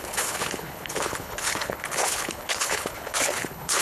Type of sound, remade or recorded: remade